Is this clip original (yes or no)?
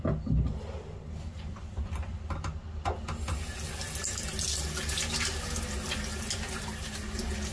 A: yes